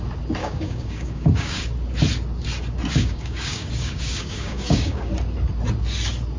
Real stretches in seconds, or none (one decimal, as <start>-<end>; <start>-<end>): 0.0-0.4; 1.6-2.9; 5.1-6.4